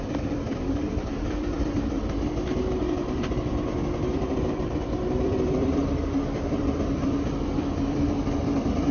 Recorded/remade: remade